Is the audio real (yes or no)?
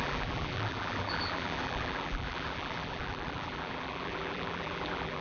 no